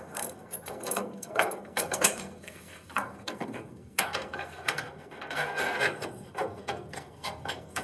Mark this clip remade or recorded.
remade